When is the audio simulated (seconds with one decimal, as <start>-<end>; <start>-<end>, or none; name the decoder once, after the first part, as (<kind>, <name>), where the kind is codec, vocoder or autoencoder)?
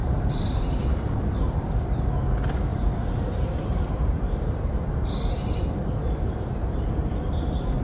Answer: 0.0-1.2 (vocoder, BigVGAN v2); 2.7-6.9